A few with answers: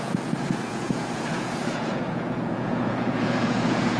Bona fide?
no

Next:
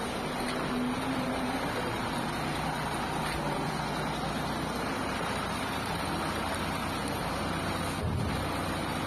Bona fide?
yes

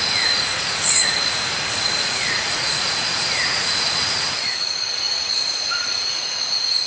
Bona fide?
no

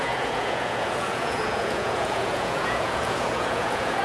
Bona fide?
no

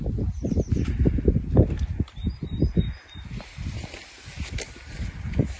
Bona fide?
yes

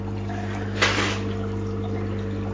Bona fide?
yes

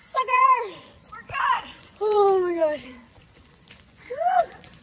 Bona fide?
no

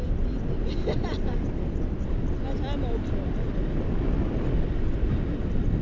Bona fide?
yes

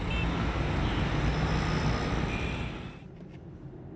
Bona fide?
yes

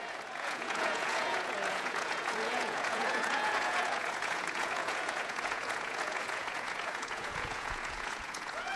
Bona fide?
no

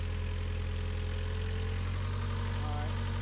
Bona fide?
yes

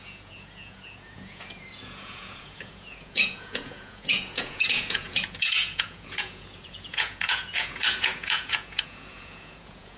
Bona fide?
no